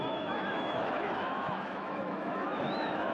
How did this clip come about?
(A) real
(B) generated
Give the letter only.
B